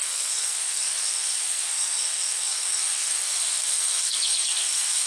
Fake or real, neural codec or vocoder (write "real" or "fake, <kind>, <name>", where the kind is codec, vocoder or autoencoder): fake, codec, SNAC